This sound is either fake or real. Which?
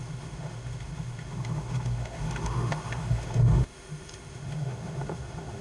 fake